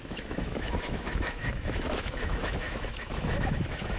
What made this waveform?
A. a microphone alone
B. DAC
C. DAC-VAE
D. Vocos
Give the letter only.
C